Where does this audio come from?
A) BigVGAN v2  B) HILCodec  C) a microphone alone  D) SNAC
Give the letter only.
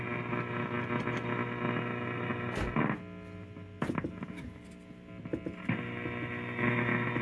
C